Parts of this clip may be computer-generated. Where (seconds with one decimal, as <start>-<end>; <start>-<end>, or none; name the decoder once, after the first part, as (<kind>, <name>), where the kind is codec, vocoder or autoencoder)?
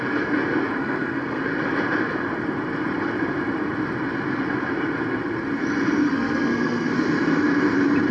0.8-1.4 (codec, SNAC); 6.0-6.9